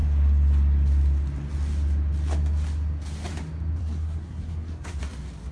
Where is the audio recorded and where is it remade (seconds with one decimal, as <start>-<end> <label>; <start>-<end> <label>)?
0.0-3.8 recorded; 3.8-5.0 remade; 5.0-5.5 recorded